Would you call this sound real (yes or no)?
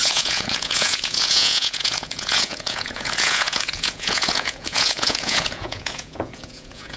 no